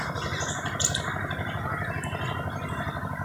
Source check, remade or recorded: recorded